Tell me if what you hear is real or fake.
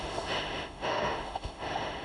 fake